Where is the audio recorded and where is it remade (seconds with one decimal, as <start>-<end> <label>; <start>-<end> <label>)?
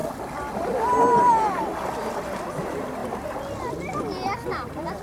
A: 0.0-0.5 remade; 0.5-5.0 recorded